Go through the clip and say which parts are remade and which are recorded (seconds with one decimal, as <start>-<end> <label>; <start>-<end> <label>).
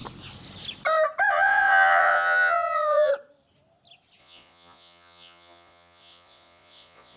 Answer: 0.0-1.3 recorded; 1.3-3.1 remade; 3.1-4.2 recorded; 4.2-7.2 remade